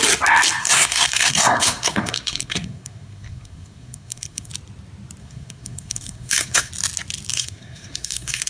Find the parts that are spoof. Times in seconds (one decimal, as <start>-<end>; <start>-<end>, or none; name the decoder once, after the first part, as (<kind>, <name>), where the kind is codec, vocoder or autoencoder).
0.6-4.5 (codec, SNAC); 5.2-6.7; 7.3-8.5